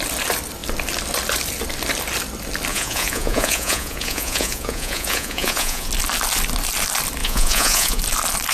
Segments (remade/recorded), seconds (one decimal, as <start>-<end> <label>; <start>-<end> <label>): 0.0-2.7 recorded; 2.7-5.9 remade; 5.9-7.2 recorded; 7.2-8.0 remade; 8.0-8.5 recorded